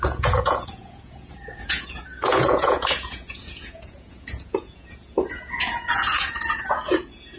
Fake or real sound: fake